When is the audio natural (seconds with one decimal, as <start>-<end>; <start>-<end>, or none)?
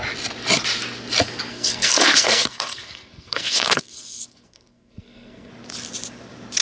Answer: 0.0-1.5; 5.5-6.6